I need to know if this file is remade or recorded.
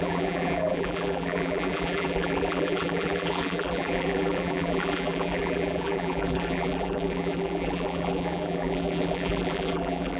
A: remade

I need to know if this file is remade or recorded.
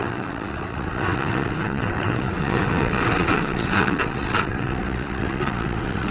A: remade